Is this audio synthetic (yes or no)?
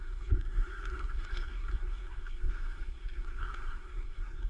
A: yes